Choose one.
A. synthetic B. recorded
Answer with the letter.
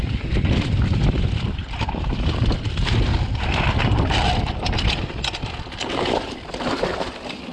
A